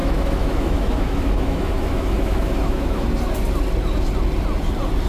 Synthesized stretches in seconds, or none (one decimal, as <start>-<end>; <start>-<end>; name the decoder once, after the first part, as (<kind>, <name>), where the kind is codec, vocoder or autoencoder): 0.0-3.1 (autoencoder, DAC-VAE)